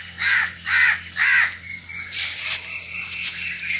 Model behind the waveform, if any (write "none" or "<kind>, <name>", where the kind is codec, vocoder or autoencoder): none